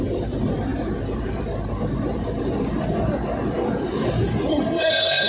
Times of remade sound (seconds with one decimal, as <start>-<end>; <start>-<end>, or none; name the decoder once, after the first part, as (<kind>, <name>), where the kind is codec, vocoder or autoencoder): 4.5-5.3 (codec, SNAC)